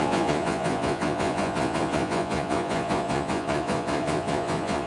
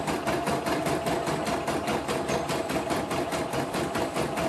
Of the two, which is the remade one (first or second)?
first